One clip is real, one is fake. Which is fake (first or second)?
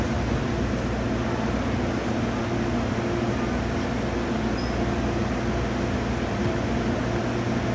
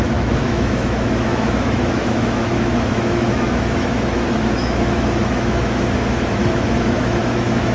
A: second